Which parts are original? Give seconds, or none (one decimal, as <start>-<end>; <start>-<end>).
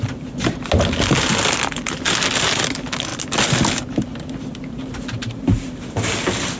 0.0-6.6